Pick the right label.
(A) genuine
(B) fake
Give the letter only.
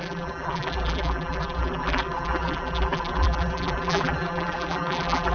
B